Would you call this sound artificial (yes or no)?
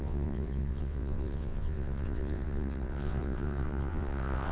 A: yes